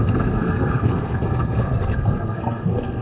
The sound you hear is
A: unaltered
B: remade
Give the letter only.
B